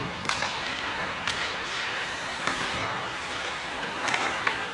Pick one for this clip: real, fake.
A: fake